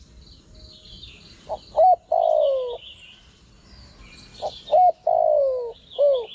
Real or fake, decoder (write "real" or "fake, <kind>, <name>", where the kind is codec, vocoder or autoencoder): real